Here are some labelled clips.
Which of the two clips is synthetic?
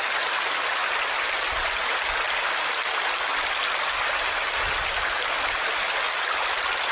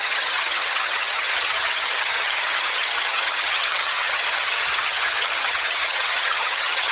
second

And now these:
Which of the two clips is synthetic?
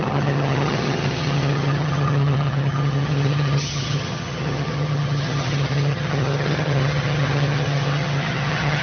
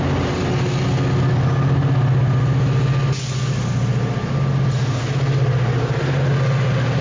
first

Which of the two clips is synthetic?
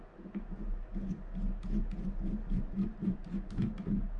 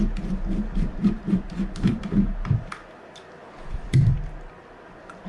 second